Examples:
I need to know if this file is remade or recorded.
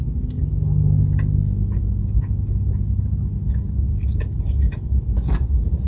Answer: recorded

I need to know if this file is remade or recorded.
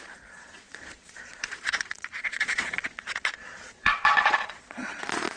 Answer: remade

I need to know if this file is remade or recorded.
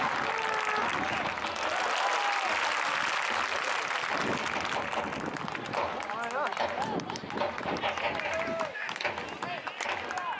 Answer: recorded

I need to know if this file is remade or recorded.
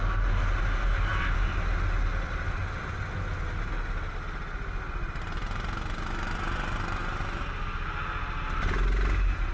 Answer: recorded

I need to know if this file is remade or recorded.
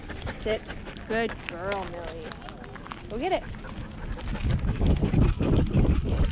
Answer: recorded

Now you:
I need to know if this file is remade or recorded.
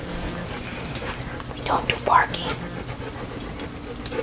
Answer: recorded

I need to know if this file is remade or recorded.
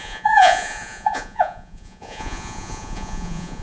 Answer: remade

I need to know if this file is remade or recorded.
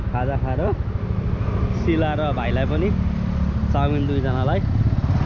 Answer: recorded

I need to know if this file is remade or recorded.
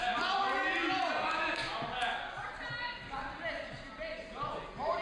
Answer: recorded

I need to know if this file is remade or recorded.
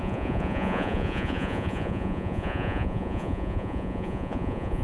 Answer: remade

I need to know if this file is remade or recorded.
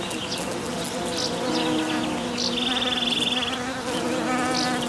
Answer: recorded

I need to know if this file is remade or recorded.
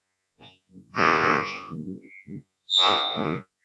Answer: remade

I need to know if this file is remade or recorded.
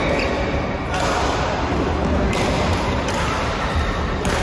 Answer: recorded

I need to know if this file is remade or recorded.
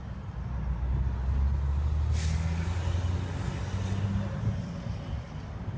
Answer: recorded